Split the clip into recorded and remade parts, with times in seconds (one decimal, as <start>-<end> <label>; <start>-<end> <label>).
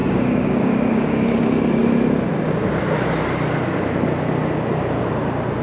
0.0-1.4 remade; 1.4-5.6 recorded